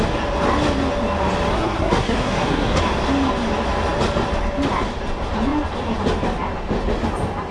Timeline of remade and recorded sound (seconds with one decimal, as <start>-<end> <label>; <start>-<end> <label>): 0.0-1.5 recorded; 1.5-2.8 remade; 2.8-7.5 recorded